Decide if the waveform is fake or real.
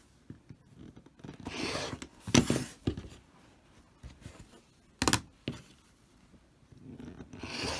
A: real